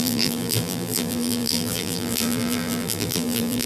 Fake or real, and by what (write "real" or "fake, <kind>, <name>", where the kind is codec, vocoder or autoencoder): fake, vocoder, BigVGAN v2